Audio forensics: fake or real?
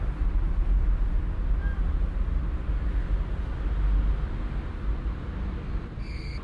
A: real